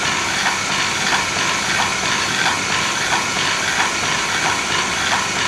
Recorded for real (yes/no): yes